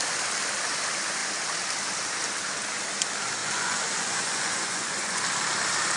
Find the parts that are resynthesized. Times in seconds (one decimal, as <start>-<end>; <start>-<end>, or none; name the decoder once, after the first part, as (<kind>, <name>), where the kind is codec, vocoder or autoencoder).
3.4-5.2 (vocoder, Vocos)

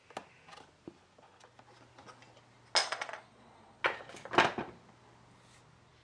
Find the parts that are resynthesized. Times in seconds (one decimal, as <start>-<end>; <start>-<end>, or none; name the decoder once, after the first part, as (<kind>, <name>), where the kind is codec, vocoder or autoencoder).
2.8-3.8 (vocoder, Vocos)

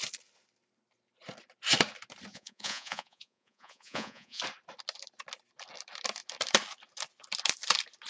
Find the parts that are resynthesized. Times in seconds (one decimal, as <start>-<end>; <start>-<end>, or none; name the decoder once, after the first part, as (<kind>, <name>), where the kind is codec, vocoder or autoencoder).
2.3-4.4 (vocoder, Vocos)

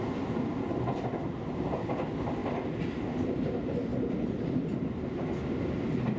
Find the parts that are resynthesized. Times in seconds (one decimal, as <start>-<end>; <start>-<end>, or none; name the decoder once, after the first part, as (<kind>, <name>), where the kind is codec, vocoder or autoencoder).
none